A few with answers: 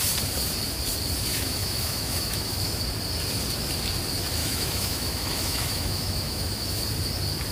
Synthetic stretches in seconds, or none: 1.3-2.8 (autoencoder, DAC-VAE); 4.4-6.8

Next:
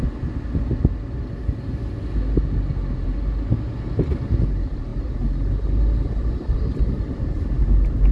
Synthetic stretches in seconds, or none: none

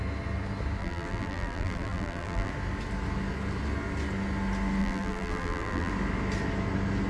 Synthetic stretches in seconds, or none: 0.8-2.5 (vocoder, BigVGAN v2); 4.8-5.9

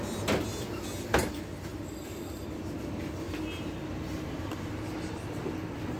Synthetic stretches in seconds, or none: none

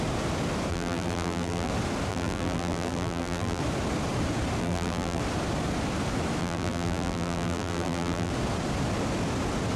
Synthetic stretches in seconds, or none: 0.7-1.7 (vocoder, BigVGAN v2); 2.1-3.6; 4.6-5.2; 6.4-8.3

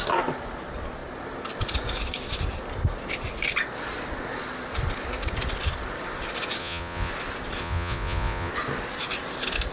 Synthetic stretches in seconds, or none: 6.6-7.1 (vocoder, Vocos); 7.6-8.5

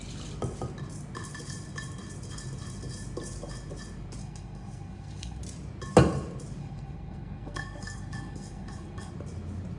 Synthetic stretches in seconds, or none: 4.2-5.4 (codec, SNAC); 6.6-9.1